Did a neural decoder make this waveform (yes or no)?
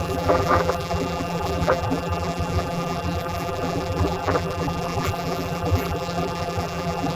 yes